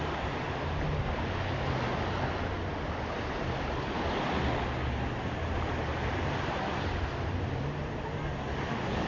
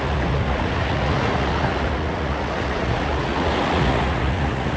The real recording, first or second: first